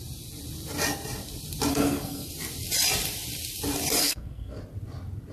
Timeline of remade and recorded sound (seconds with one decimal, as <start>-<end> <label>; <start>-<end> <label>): 0.0-1.7 recorded; 1.7-2.3 remade; 2.3-4.0 recorded; 4.0-4.6 remade; 4.6-5.3 recorded

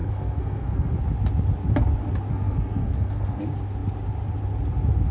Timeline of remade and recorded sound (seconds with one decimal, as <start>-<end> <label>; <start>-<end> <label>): 0.0-1.0 remade; 1.0-2.3 recorded; 2.3-3.4 remade; 3.4-5.1 recorded

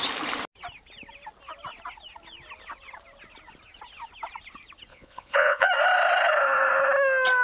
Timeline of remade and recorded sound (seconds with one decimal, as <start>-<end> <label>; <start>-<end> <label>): 0.0-4.9 recorded; 4.9-5.7 remade; 5.7-7.4 recorded